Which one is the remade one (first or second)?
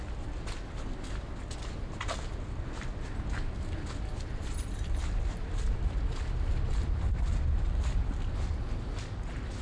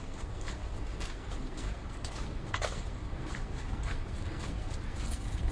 second